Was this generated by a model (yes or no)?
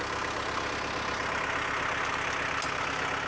no